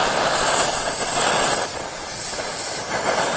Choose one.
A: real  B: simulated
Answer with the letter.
B